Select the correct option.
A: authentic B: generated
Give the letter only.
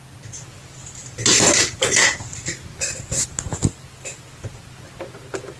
A